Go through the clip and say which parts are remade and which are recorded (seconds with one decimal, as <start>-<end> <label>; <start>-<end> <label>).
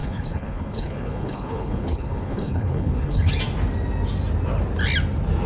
0.0-3.3 remade; 3.3-5.5 recorded